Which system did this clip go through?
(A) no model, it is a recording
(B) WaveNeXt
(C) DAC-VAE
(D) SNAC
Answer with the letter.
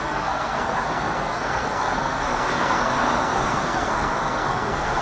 D